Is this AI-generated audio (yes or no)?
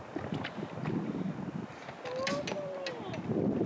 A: no